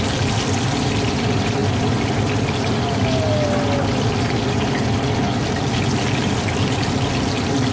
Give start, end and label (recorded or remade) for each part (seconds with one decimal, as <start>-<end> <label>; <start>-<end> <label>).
0.0-7.7 recorded